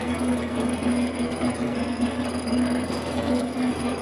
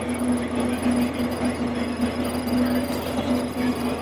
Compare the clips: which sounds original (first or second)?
second